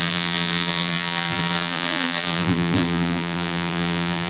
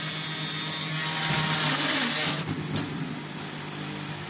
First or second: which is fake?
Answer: first